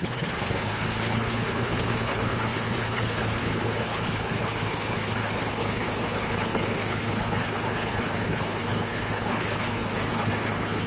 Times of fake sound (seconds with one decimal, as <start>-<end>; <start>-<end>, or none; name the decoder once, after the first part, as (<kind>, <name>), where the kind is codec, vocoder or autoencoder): 0.0-10.9 (codec, HILCodec)